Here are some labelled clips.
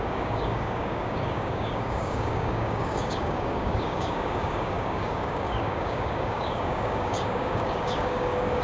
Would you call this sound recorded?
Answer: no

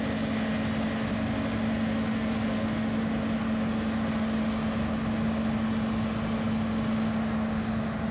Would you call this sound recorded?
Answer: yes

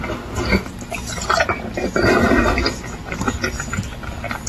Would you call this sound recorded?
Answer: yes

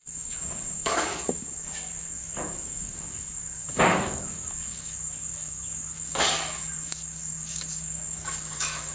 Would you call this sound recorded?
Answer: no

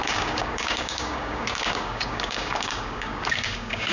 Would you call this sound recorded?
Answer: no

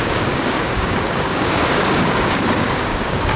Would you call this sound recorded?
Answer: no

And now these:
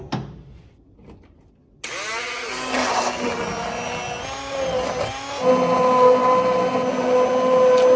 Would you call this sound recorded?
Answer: yes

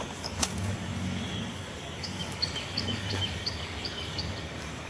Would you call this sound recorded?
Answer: no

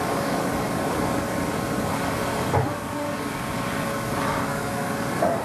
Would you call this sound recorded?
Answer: no